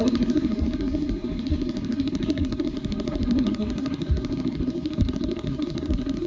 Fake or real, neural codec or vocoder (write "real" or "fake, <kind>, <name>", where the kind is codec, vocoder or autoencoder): fake, codec, SNAC